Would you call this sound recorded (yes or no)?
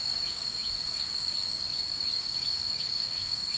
no